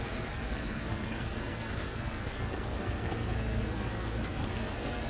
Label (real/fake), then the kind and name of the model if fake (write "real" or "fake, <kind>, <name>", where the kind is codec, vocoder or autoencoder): fake, codec, SNAC